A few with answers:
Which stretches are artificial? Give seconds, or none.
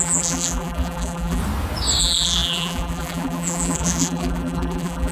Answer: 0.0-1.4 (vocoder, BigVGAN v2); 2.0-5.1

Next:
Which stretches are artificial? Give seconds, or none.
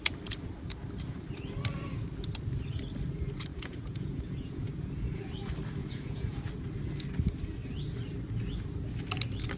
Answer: 3.5-5.2 (vocoder, Vocos); 5.8-6.4